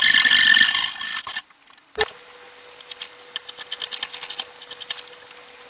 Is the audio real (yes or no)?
yes